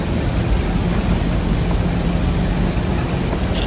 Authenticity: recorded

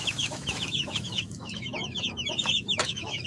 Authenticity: remade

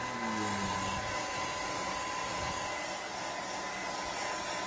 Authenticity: recorded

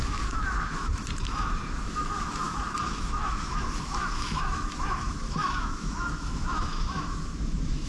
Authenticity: remade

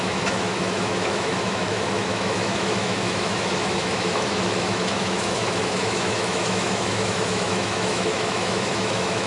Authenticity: remade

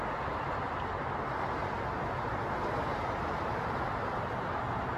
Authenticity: recorded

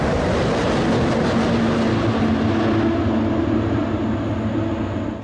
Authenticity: recorded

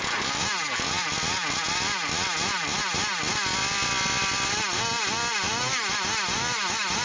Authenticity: recorded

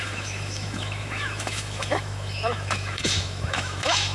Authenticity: remade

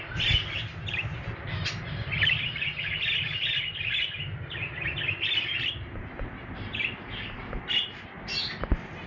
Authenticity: recorded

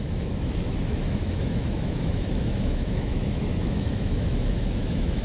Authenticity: remade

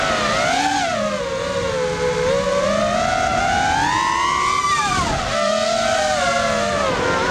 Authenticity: recorded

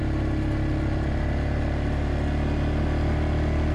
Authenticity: recorded